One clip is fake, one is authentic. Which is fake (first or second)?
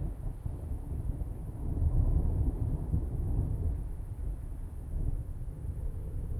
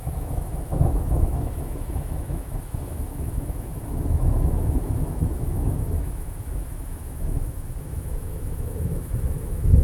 second